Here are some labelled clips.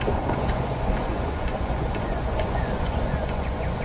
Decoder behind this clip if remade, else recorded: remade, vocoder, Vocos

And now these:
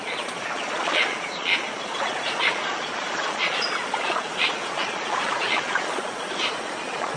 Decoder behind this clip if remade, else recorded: remade, vocoder, Vocos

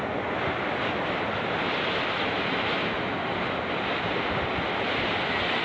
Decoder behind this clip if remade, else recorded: recorded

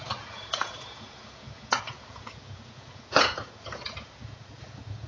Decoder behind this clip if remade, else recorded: remade, vocoder, Vocos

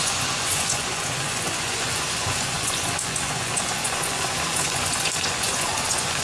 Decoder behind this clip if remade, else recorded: remade, vocoder, Vocos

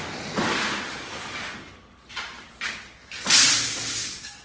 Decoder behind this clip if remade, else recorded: recorded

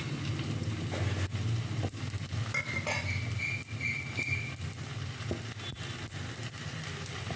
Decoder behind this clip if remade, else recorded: recorded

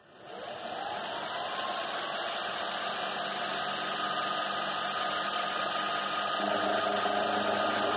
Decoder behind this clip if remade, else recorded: recorded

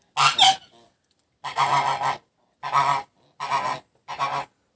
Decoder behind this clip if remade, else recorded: recorded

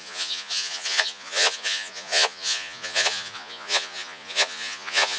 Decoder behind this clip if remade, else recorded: remade, vocoder, Vocos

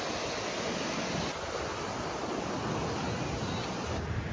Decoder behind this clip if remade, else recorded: recorded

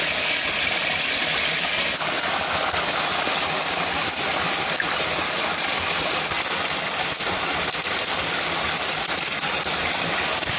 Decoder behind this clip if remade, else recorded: recorded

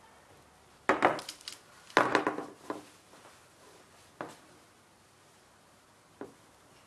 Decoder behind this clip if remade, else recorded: recorded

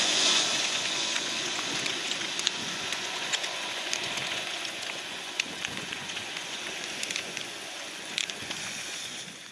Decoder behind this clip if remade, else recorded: remade, vocoder, Vocos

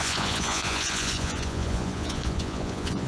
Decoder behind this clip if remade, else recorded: remade, vocoder, Vocos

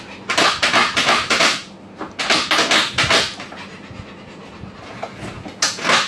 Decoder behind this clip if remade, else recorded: recorded